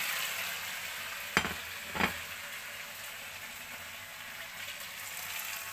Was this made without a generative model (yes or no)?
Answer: yes